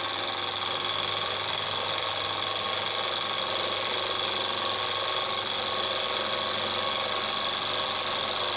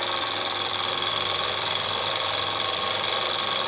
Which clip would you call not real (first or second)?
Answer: second